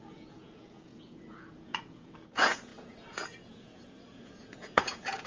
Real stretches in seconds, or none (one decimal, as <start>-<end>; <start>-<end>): none